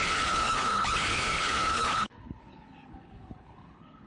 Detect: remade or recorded remade